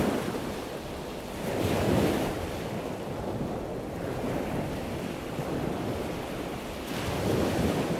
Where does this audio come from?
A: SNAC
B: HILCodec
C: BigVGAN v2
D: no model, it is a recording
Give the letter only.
D